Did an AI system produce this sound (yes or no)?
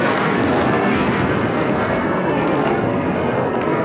yes